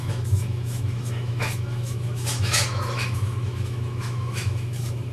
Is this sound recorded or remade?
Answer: remade